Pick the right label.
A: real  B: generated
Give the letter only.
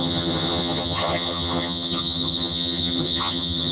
B